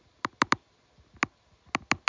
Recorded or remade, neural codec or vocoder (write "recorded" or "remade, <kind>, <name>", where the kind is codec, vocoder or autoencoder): recorded